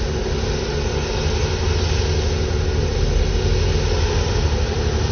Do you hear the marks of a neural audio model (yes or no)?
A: no